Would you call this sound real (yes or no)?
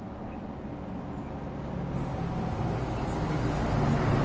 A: yes